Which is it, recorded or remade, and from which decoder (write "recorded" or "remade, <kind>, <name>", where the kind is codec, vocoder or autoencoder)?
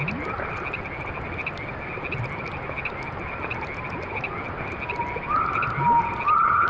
recorded